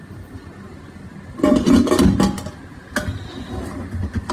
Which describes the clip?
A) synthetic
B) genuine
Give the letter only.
B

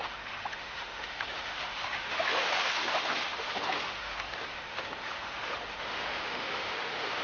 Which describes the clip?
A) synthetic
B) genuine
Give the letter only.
A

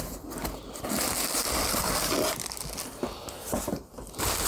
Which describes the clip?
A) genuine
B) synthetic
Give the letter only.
A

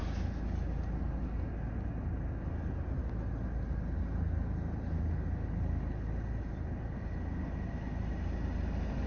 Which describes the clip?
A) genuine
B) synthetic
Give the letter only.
A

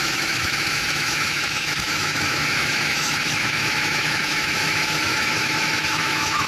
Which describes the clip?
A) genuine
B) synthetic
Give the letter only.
B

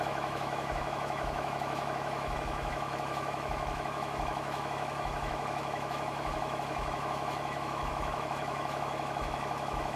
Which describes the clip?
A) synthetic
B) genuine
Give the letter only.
A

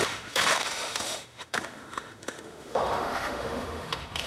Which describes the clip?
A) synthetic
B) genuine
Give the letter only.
A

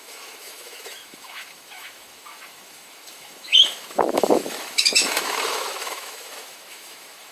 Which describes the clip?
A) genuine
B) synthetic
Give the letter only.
B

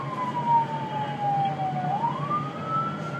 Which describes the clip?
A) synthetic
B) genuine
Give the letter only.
B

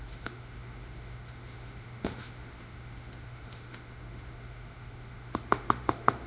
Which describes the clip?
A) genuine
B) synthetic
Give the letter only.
B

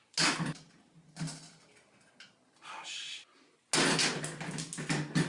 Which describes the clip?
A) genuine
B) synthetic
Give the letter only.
A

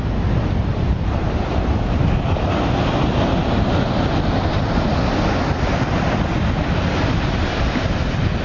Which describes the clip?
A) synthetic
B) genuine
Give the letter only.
B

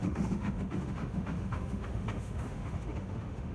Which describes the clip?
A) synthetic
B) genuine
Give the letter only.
A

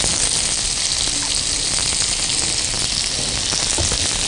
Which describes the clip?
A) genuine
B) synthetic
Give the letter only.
A